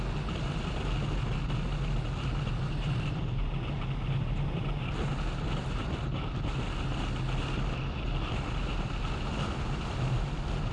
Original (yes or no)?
yes